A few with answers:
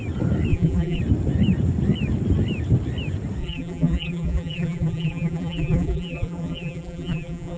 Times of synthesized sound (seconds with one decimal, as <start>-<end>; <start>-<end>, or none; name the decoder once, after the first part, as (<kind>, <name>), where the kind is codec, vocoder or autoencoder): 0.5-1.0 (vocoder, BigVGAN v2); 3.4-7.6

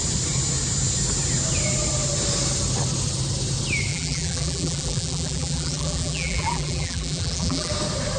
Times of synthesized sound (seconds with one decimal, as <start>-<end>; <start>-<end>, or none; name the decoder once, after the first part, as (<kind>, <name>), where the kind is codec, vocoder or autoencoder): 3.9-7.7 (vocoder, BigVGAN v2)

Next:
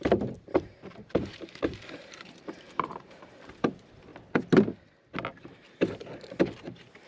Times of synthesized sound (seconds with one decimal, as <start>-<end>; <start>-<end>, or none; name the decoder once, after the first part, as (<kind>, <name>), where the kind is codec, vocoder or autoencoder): 0.0-4.1 (vocoder, BigVGAN v2); 5.4-7.1

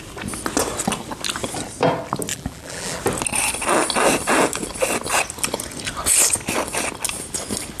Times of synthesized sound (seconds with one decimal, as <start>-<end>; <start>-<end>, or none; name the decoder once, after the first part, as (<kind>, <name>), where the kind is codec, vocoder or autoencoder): 2.3-3.0 (vocoder, BigVGAN v2)

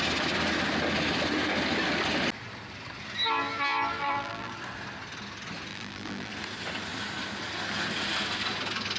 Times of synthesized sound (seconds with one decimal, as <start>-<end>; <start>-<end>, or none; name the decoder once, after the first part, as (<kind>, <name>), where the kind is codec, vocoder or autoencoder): 4.0-4.5 (vocoder, BigVGAN v2); 5.7-6.3

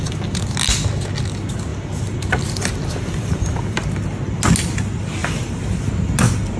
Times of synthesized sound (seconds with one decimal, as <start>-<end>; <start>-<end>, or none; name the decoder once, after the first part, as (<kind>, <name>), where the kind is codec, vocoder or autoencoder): 1.7-3.9 (vocoder, BigVGAN v2); 5.2-5.9

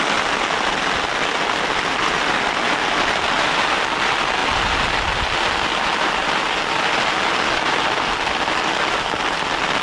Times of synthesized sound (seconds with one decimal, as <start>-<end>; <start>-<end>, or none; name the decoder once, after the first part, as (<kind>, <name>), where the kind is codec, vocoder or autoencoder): 0.0-4.4 (vocoder, BigVGAN v2); 8.9-9.8

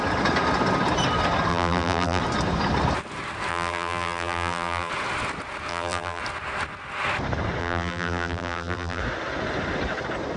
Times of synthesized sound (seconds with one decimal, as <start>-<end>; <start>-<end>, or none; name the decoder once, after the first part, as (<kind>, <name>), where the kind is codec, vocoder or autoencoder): 1.5-2.2 (vocoder, BigVGAN v2); 3.5-4.9; 5.7-6.2; 7.6-9.0